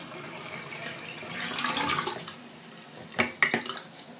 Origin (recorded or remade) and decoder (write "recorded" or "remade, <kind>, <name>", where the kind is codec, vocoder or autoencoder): recorded